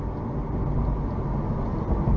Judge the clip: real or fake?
real